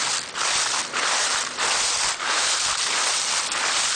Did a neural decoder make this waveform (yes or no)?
no